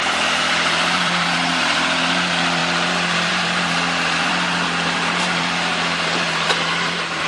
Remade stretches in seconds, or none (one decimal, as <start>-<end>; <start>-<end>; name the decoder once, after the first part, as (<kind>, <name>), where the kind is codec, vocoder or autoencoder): 0.0-7.3 (vocoder, BigVGAN v2)